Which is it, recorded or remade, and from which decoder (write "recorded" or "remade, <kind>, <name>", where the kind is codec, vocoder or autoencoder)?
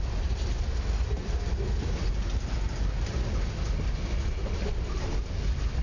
recorded